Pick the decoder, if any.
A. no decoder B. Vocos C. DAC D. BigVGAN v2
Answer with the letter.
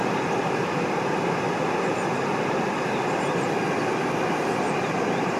A